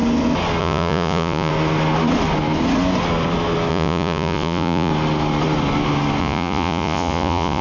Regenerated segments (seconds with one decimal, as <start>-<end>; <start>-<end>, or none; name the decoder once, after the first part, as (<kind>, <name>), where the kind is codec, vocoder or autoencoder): 0.6-1.5 (vocoder, Vocos); 3.7-4.9; 6.2-7.6